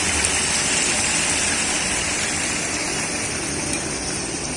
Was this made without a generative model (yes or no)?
no